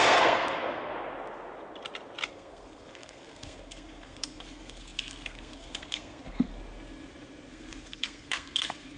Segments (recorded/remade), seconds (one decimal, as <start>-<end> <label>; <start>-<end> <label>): 0.0-0.9 remade; 0.9-2.3 recorded; 2.3-6.5 remade; 6.5-7.5 recorded; 7.5-9.0 remade